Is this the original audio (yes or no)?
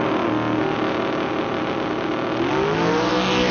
yes